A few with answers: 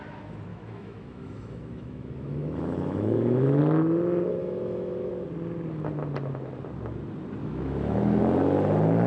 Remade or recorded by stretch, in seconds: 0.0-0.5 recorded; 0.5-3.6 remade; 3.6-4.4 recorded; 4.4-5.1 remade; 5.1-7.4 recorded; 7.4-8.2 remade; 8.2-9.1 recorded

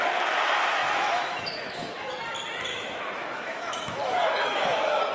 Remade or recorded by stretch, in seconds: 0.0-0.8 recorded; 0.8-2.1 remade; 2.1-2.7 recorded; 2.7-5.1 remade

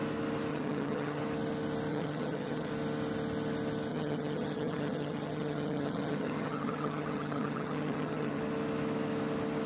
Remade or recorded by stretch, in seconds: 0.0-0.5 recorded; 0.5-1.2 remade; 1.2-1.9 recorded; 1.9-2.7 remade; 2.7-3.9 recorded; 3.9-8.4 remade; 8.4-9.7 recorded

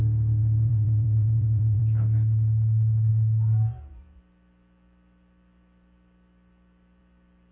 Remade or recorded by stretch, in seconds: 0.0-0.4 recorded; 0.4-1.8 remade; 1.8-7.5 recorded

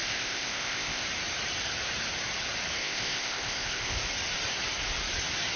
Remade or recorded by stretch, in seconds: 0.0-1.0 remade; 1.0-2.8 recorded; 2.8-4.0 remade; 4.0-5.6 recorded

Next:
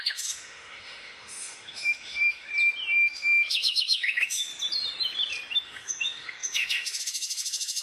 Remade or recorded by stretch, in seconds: 0.0-2.5 remade; 2.5-3.1 recorded; 3.1-4.5 remade; 4.5-5.6 recorded; 5.6-7.8 remade